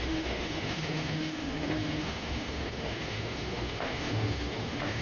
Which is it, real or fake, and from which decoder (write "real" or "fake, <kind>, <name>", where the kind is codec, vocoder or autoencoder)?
fake, autoencoder, DAC-VAE